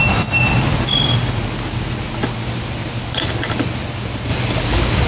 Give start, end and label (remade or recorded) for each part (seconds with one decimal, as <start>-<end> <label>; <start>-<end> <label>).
0.0-0.7 recorded; 0.7-3.8 remade; 3.8-5.1 recorded